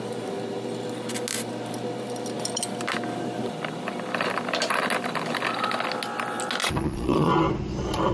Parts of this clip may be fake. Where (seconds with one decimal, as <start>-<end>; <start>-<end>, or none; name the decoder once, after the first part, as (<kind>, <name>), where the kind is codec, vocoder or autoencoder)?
6.6-7.3 (vocoder, Vocos)